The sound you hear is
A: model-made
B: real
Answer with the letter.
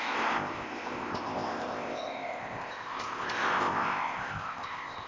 A